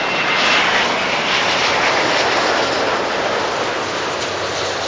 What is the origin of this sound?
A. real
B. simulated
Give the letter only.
A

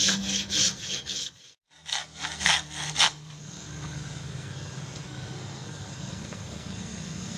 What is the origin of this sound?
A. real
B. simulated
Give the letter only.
B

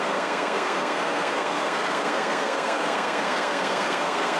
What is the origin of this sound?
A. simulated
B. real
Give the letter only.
A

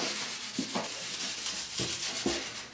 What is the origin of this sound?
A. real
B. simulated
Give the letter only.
A